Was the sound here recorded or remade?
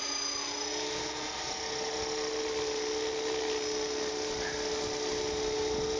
recorded